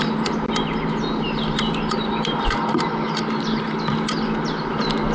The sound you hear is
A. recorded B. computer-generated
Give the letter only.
A